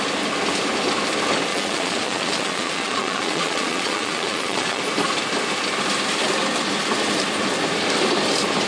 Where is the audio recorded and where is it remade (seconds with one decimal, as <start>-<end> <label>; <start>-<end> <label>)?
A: 0.0-1.5 recorded; 1.5-4.8 remade; 4.8-8.7 recorded